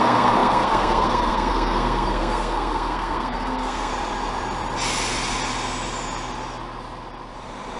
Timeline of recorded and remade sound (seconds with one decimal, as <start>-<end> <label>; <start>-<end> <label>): 0.0-3.9 remade; 3.9-7.8 recorded

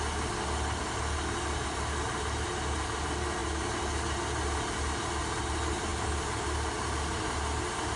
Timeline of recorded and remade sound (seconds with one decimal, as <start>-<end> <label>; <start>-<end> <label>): 0.0-8.0 recorded

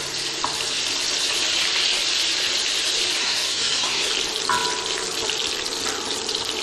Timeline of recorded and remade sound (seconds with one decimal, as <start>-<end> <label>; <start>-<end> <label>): 0.0-3.2 recorded; 3.2-4.1 remade; 4.1-6.6 recorded

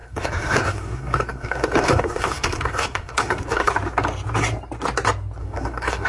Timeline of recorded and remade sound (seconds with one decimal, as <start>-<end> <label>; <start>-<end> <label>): 0.0-3.7 remade; 3.7-5.4 recorded; 5.4-6.1 remade

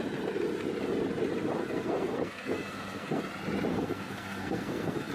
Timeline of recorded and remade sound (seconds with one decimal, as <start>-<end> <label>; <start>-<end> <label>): 0.0-1.6 recorded; 1.6-3.2 remade; 3.2-3.7 recorded; 3.7-5.1 remade

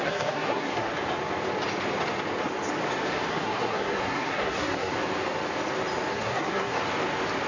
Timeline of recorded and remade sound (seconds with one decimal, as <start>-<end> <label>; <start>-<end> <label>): 0.0-0.9 remade; 0.9-3.3 recorded; 3.3-4.9 remade; 4.9-6.1 recorded; 6.1-6.8 remade; 6.8-7.5 recorded

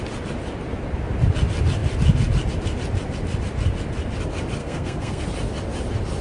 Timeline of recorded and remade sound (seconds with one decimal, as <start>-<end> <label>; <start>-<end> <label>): 0.0-4.6 recorded; 4.6-5.2 remade; 5.2-6.2 recorded

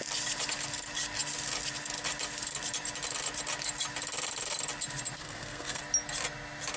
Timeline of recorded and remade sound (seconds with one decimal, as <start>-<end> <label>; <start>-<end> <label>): 0.0-5.2 recorded; 5.2-5.8 remade; 5.8-6.8 recorded